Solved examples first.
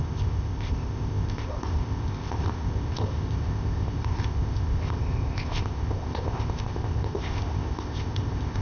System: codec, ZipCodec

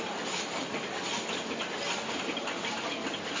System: none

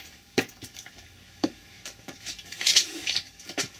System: codec, DAC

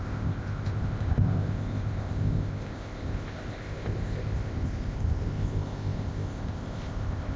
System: codec, ZipCodec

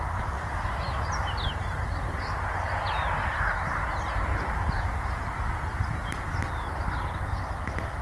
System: none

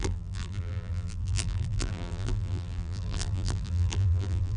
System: vocoder, BigVGAN v2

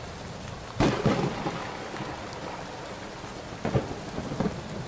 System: none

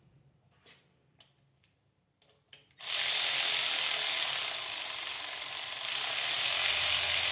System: none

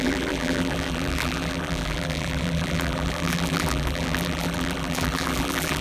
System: vocoder, BigVGAN v2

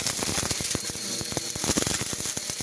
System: none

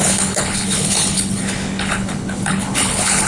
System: codec, HILCodec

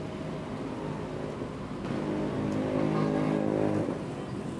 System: none